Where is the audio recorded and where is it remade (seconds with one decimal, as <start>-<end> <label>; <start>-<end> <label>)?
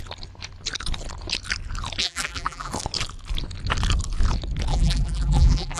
0.0-2.0 recorded; 2.0-2.7 remade; 2.7-4.7 recorded; 4.7-5.8 remade